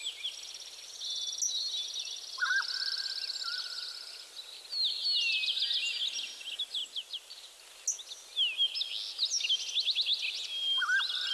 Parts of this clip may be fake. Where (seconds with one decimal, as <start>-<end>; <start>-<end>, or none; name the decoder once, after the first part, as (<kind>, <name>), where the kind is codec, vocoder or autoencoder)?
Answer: 6.8-7.6 (vocoder, BigVGAN v2)